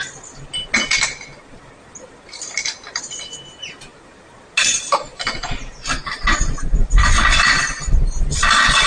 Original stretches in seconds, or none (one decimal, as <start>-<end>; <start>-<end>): 0.0-8.9